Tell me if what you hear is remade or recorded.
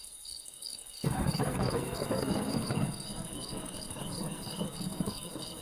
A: remade